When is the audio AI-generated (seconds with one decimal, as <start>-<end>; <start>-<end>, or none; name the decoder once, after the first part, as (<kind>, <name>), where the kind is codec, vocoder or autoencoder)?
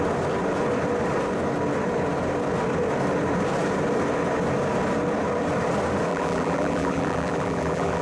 6.1-8.0 (vocoder, BigVGAN v2)